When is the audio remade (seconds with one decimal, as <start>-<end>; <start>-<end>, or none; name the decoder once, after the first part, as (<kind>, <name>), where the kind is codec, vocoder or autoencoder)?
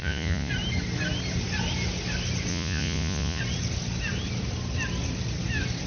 0.0-0.5 (vocoder, Vocos); 2.5-3.4